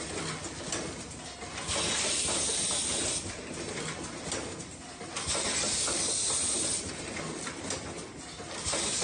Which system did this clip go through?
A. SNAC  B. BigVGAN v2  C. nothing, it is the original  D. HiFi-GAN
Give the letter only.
C